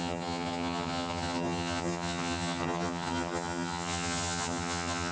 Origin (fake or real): fake